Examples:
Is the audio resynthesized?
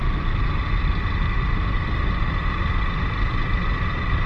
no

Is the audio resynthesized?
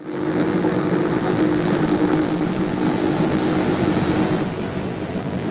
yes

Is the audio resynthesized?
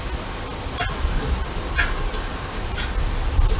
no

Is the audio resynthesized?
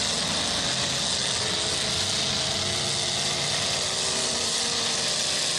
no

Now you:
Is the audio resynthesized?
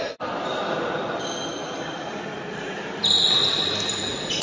no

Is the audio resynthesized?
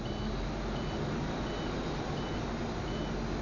no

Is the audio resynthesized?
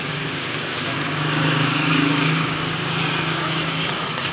yes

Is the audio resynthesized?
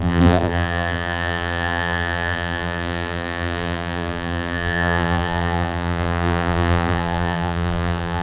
yes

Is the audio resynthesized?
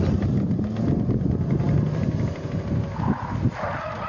no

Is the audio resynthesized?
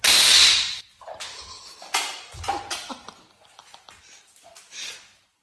no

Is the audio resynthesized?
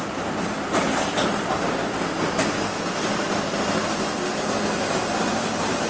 no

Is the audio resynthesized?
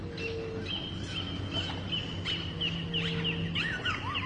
no